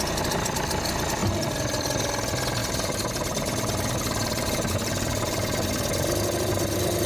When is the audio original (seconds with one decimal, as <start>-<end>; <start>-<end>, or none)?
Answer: 0.0-2.6